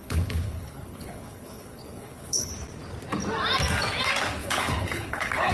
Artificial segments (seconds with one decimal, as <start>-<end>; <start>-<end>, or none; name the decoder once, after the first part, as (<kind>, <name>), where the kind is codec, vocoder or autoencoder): 0.0-2.5 (codec, HILCodec); 4.4-5.5